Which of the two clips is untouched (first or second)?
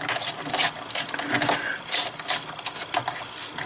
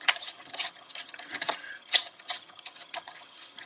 first